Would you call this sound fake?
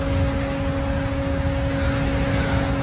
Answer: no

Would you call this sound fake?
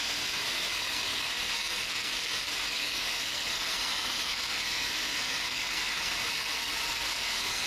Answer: yes